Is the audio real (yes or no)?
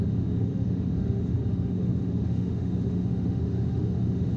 no